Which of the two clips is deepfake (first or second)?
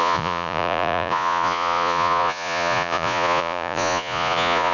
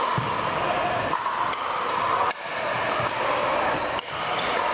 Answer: first